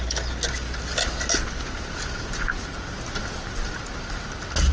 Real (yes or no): yes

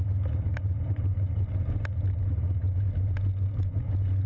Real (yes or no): yes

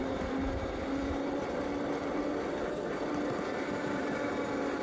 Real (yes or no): yes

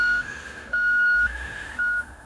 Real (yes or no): no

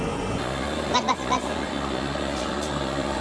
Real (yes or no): no